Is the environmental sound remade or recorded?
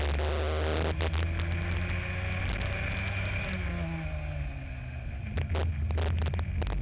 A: recorded